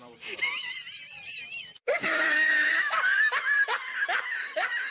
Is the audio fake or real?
fake